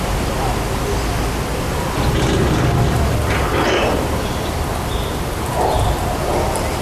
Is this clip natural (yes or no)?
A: yes